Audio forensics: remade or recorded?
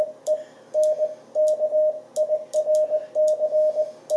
recorded